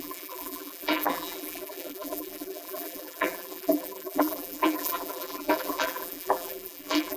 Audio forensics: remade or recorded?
remade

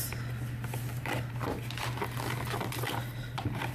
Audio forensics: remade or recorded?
remade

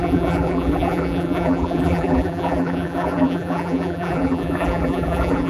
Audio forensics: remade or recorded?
remade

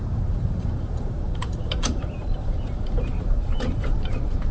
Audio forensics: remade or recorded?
remade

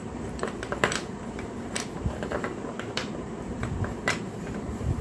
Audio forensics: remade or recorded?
remade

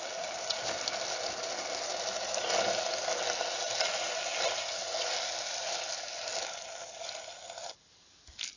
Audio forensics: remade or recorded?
recorded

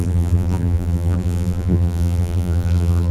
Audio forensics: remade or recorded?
remade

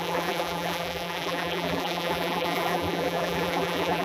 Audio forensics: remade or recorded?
remade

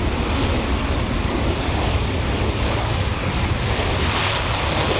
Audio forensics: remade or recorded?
recorded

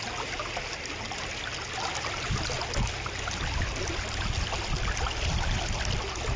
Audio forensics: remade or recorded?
recorded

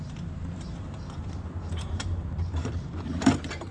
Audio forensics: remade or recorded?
remade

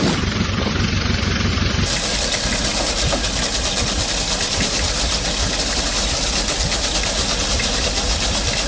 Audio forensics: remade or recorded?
recorded